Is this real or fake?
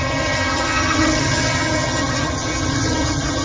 fake